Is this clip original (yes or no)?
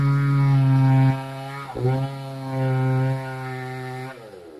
yes